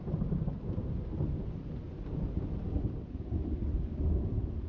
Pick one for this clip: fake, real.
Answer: real